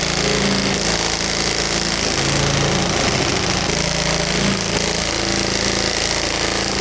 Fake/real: real